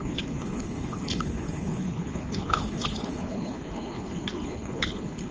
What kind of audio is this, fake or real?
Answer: fake